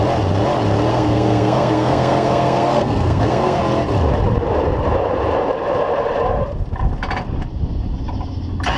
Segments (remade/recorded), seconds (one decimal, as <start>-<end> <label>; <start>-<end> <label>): 0.0-0.9 recorded; 0.9-3.6 remade; 3.6-8.8 recorded